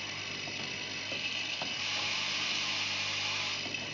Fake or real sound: real